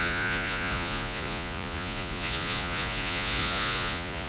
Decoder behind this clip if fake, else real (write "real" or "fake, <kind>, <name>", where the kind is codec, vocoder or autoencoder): fake, vocoder, Vocos